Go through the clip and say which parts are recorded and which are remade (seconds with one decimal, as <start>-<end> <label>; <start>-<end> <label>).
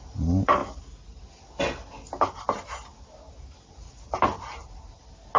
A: 0.0-5.4 recorded